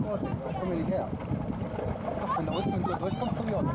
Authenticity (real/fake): real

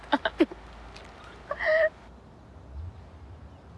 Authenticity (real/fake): real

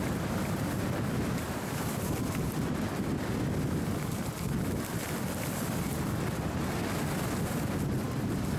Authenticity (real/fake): real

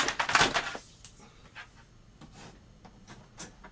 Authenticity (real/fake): real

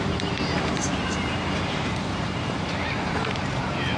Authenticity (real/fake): fake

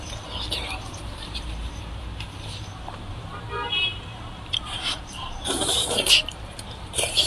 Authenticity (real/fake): fake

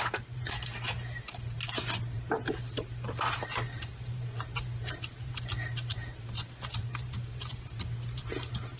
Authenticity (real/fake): fake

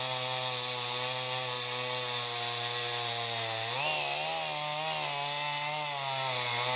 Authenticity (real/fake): real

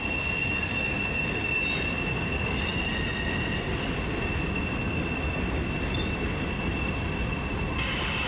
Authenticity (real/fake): real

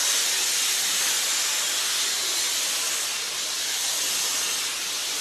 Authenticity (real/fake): real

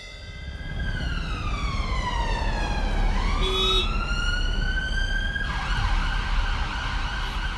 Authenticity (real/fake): real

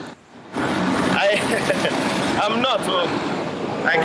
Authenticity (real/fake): real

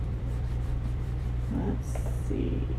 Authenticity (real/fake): fake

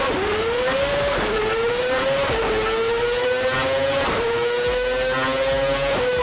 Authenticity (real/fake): real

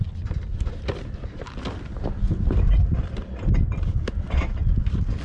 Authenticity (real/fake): real